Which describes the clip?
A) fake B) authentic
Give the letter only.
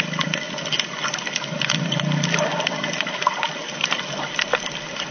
B